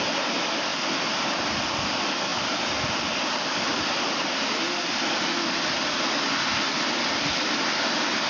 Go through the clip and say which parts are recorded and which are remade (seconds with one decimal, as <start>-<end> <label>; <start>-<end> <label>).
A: 0.0-0.7 recorded; 0.7-1.4 remade; 1.4-8.3 recorded